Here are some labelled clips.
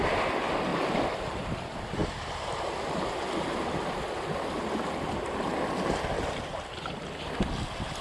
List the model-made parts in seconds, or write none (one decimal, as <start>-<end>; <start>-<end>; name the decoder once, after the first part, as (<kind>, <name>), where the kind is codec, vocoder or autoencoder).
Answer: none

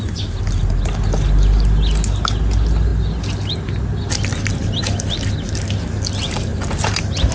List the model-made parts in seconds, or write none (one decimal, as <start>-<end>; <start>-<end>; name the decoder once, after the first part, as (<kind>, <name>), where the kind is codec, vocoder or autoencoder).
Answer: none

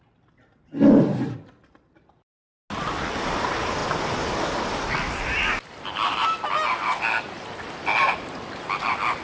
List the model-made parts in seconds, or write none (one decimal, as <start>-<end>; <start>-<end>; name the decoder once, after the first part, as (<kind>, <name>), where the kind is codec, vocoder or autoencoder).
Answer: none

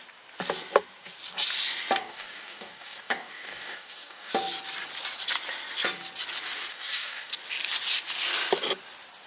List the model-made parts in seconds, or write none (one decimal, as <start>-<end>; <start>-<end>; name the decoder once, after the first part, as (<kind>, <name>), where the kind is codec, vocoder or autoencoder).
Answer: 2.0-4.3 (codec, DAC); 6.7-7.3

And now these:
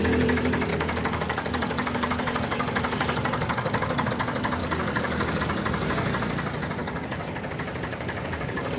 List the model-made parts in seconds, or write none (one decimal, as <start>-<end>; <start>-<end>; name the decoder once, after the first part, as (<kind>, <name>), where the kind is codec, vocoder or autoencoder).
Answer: 0.7-4.1 (codec, DAC); 4.6-5.4; 6.8-7.5; 7.9-8.8